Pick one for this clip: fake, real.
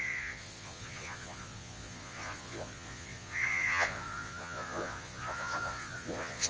fake